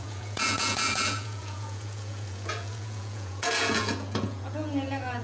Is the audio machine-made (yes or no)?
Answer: yes